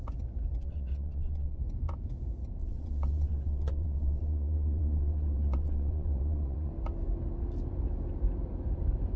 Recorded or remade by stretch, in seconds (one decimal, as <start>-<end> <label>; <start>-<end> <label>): 0.0-0.6 recorded; 0.6-1.6 remade; 1.6-2.6 recorded; 2.6-6.7 remade; 6.7-9.2 recorded